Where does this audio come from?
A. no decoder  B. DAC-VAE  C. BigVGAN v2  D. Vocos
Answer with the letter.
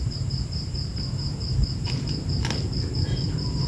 C